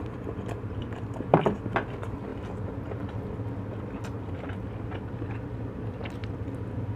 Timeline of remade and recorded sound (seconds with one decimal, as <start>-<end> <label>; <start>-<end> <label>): 0.0-2.3 remade; 2.3-5.3 recorded; 5.3-7.0 remade